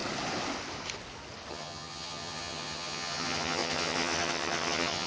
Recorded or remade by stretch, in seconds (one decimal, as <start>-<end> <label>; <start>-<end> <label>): 0.0-1.5 recorded; 1.5-5.1 remade

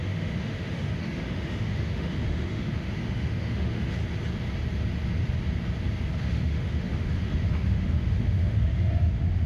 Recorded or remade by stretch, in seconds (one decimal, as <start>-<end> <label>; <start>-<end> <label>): 0.0-4.0 remade; 4.0-6.2 recorded; 6.2-9.5 remade